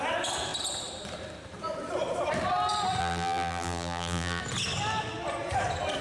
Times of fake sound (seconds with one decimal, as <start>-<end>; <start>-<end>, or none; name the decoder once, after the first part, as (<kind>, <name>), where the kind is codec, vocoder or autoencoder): 3.0-4.4 (vocoder, BigVGAN v2)